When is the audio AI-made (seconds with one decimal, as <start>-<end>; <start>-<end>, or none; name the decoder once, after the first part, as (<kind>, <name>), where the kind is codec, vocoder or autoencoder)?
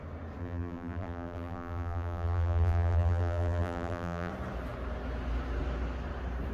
0.4-4.3 (vocoder, BigVGAN v2)